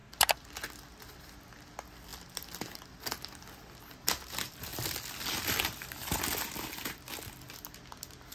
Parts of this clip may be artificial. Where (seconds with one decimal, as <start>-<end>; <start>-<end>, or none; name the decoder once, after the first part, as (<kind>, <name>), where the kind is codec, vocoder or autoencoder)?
none